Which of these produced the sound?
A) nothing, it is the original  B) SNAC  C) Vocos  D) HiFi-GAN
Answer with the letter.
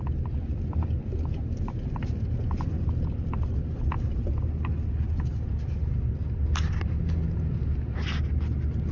A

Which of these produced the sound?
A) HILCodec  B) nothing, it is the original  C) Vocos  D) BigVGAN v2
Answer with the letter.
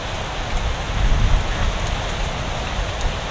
B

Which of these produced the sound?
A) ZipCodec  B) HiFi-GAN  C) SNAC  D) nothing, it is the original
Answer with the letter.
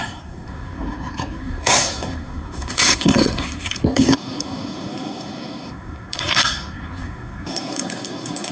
C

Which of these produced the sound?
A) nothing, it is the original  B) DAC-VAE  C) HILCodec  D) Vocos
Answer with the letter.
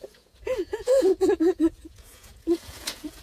D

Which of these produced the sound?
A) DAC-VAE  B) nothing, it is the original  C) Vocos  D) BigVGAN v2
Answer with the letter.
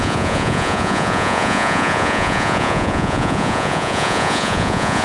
C